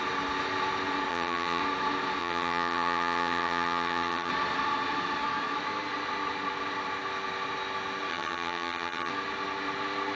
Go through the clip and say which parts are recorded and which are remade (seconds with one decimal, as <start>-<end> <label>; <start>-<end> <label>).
0.0-1.1 recorded; 1.1-1.6 remade; 1.6-2.2 recorded; 2.2-4.3 remade; 4.3-8.1 recorded; 8.1-9.1 remade; 9.1-10.1 recorded